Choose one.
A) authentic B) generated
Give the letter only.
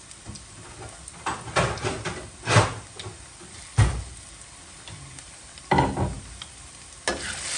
A